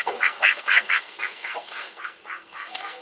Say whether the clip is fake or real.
fake